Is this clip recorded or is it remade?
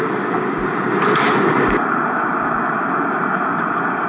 recorded